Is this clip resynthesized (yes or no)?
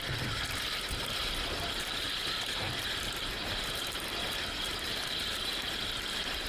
yes